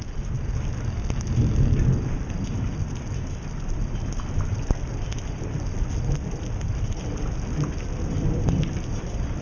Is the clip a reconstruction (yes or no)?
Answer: no